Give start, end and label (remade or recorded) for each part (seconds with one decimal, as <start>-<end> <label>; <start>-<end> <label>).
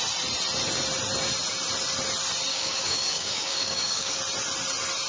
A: 0.0-2.5 recorded; 2.5-4.2 remade; 4.2-5.1 recorded